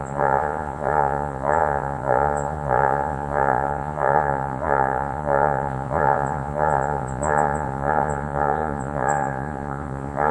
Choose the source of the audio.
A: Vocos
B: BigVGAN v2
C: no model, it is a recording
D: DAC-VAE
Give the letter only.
A